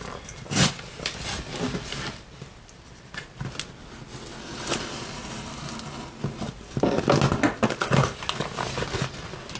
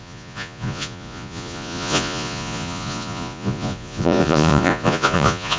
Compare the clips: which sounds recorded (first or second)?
first